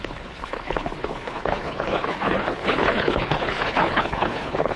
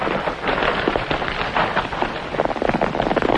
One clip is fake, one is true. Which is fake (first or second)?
first